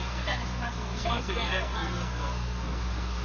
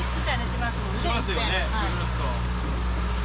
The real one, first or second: second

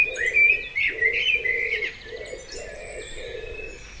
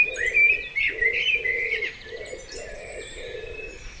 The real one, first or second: first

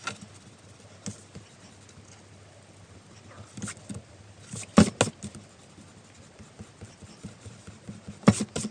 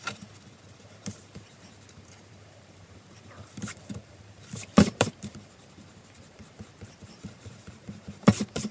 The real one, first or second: first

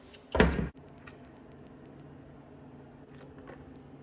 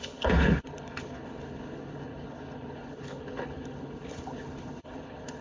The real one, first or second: first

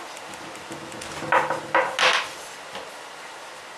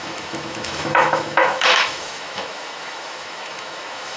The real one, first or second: first